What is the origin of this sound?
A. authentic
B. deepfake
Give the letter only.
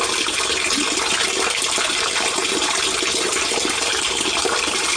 B